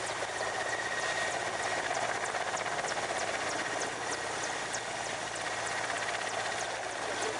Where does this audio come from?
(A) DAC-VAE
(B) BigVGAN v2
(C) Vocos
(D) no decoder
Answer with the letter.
D